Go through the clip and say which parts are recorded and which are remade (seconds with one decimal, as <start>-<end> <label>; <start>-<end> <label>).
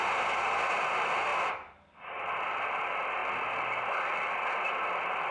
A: 0.0-5.3 recorded